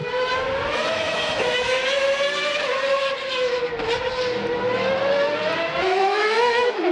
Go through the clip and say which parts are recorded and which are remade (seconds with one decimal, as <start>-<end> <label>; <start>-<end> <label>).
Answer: 0.0-0.9 recorded; 0.9-1.8 remade; 1.8-5.8 recorded; 5.8-6.9 remade